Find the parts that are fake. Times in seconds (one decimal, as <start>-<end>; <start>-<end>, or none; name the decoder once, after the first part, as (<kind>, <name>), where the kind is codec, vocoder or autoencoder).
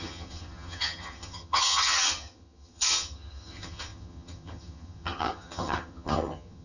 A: 0.0-6.6 (vocoder, HiFi-GAN)